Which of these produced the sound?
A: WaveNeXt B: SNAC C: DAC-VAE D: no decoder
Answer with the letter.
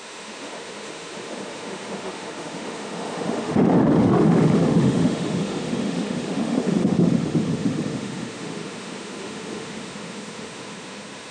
C